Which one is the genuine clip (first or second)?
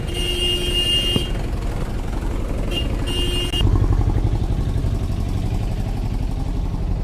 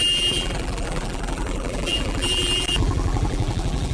first